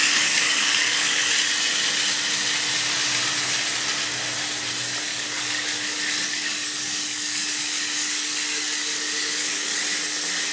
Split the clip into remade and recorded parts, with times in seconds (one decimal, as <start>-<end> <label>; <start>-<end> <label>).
0.0-1.3 remade; 1.3-5.1 recorded; 5.1-9.8 remade; 9.8-10.5 recorded